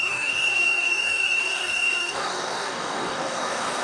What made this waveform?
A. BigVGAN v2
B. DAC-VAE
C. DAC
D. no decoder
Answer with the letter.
C